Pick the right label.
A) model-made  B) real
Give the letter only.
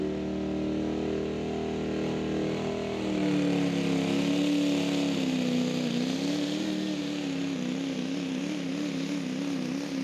B